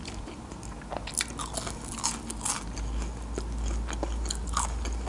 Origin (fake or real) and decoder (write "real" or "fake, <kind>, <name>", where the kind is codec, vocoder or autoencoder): real